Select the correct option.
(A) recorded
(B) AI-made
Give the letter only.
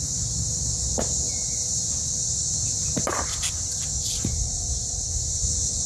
A